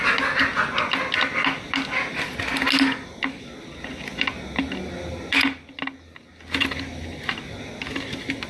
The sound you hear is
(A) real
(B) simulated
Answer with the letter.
A